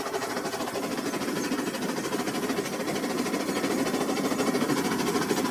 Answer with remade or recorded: recorded